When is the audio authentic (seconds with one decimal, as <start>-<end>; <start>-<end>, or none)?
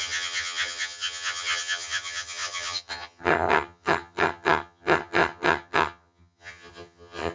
none